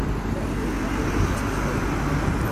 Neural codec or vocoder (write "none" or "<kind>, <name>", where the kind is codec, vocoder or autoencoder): none